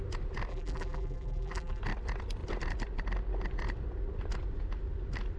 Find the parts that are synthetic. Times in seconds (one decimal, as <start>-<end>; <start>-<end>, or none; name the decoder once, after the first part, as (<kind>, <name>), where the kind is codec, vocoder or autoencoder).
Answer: 0.5-1.8 (vocoder, BigVGAN v2)